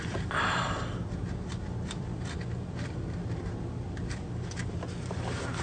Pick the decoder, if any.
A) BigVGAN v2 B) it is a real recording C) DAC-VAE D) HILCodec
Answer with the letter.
A